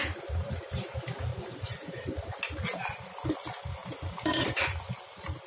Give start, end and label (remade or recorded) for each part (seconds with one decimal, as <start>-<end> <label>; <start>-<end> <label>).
0.0-1.3 recorded; 1.3-2.4 remade; 2.4-3.8 recorded; 3.8-4.6 remade; 4.6-5.5 recorded